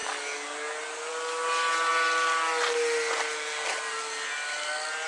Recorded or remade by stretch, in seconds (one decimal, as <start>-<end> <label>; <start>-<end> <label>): 0.0-5.1 recorded